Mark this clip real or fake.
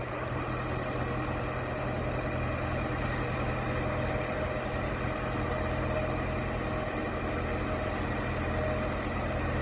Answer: real